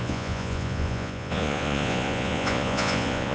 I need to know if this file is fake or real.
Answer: fake